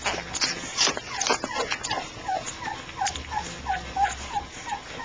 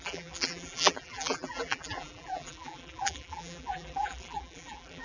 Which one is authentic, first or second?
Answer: first